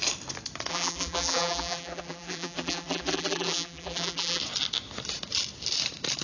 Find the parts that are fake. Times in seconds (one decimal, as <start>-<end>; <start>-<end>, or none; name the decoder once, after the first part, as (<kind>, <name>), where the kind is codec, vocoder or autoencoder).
0.7-4.4 (vocoder, BigVGAN v2)

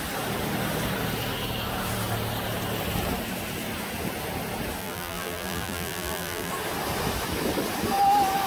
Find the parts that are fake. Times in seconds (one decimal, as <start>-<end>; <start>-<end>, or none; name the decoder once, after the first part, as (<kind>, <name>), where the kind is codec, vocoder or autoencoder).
4.8-6.5 (vocoder, BigVGAN v2)

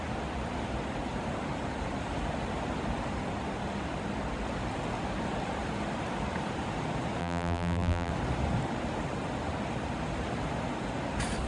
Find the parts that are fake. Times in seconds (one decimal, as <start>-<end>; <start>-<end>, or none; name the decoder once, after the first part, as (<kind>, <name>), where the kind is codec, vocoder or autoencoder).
7.2-8.1 (vocoder, BigVGAN v2)

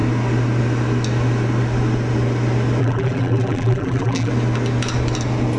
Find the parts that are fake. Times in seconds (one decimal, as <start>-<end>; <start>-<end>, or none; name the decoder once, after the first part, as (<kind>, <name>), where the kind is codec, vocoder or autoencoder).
2.8-4.3 (vocoder, BigVGAN v2)

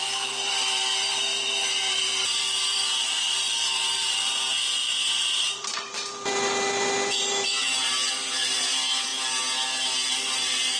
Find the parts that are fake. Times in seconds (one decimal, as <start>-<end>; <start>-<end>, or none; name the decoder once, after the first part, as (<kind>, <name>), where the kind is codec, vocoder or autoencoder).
0.0-9.1 (vocoder, BigVGAN v2); 10.2-10.8

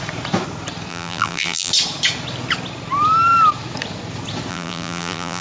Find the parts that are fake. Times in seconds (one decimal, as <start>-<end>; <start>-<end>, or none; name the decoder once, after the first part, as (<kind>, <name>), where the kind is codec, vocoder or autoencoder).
0.9-1.7 (vocoder, BigVGAN v2); 4.5-5.4

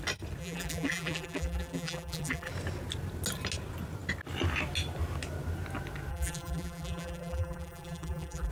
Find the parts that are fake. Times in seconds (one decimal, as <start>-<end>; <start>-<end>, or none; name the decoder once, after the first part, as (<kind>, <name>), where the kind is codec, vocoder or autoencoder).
0.4-2.5 (vocoder, BigVGAN v2); 6.1-8.5